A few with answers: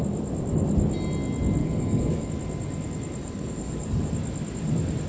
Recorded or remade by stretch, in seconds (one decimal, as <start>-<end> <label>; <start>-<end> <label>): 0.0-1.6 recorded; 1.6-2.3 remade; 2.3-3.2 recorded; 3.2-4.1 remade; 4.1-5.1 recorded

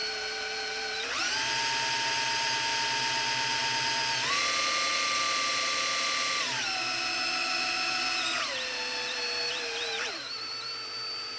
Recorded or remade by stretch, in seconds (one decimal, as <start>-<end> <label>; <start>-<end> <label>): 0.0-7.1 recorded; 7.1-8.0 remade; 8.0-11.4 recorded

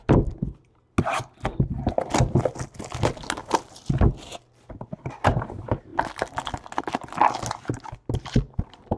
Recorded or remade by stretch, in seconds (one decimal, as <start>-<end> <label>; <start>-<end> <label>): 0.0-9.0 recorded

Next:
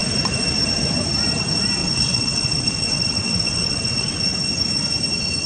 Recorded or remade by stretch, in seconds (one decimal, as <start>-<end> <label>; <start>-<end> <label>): 0.0-1.8 recorded; 1.8-4.2 remade; 4.2-5.5 recorded

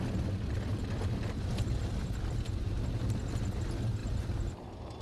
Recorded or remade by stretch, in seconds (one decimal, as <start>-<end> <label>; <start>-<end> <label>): 0.0-0.7 recorded; 0.7-3.0 remade; 3.0-5.0 recorded